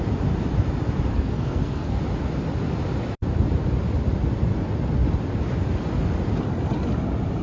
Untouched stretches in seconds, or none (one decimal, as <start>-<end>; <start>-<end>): 0.0-1.1; 2.0-7.4